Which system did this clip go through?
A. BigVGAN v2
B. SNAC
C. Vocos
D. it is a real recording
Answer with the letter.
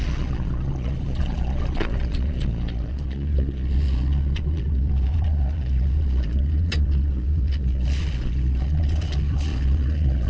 C